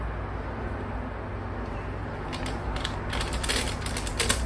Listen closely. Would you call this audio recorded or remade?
recorded